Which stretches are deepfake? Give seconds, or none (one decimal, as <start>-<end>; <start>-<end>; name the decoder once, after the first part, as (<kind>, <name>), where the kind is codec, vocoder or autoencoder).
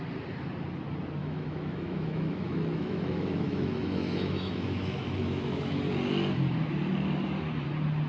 1.2-5.8 (autoencoder, DAC-VAE)